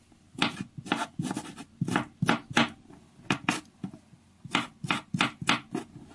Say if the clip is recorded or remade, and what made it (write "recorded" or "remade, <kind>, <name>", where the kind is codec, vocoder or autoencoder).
recorded